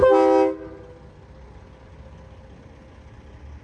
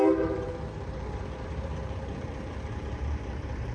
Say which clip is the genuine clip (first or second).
first